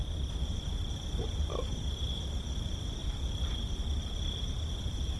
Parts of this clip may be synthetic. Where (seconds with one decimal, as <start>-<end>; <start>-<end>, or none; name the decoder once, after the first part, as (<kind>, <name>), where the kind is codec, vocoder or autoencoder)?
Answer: 0.0-5.2 (vocoder, BigVGAN v2)